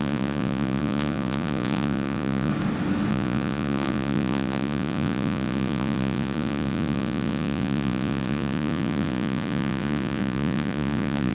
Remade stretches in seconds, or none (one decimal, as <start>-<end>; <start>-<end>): 0.0-2.5; 3.1-11.3